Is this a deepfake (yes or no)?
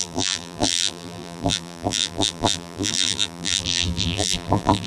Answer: yes